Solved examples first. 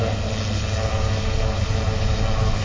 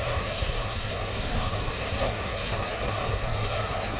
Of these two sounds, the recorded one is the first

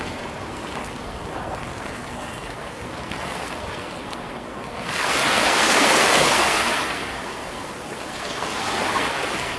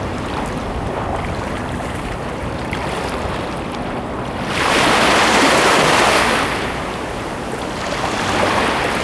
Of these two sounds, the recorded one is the second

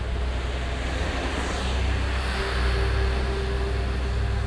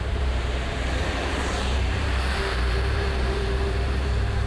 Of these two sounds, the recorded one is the first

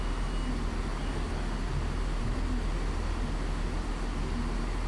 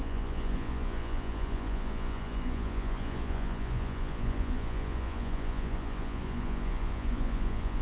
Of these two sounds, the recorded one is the first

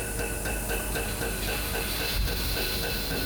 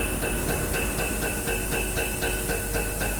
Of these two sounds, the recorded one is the second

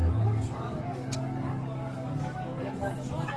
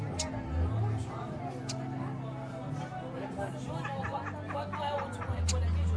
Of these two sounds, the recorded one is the second